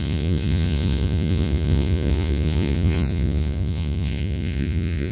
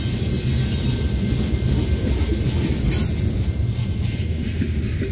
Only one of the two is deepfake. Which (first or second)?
first